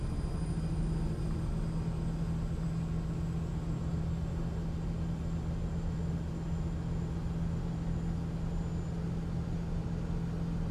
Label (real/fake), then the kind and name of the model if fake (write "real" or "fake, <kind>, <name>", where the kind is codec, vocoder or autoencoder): real